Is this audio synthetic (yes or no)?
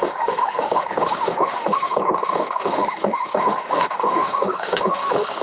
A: yes